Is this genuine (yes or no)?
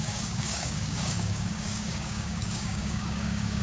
no